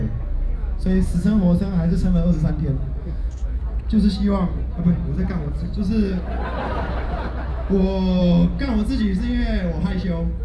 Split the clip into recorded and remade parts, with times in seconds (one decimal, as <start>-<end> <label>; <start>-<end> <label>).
0.0-0.6 recorded; 0.6-2.5 remade; 2.5-3.0 recorded; 3.0-3.6 remade; 3.6-7.5 recorded; 7.5-8.2 remade; 8.2-10.4 recorded